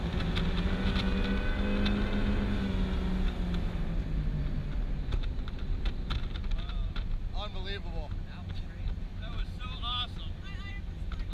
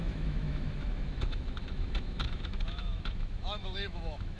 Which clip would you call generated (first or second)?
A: second